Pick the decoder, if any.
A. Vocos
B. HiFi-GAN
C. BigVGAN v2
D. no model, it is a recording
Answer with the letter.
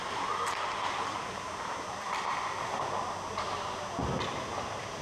C